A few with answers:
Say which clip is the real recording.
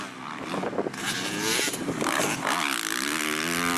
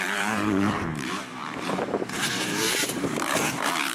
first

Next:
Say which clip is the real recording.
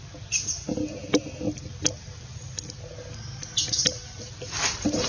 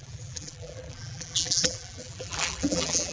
first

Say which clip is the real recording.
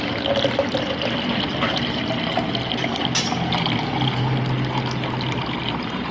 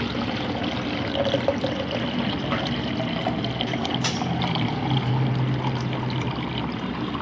first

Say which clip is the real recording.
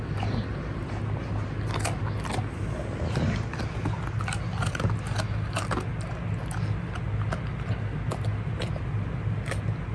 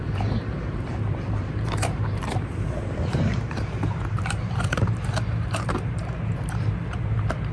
first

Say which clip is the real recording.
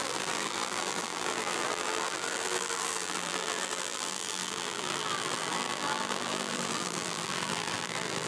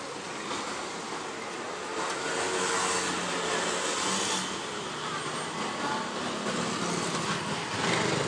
second